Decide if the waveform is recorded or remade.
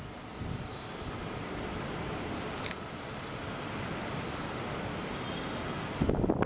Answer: remade